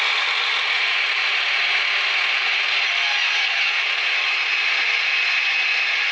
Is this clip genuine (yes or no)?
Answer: yes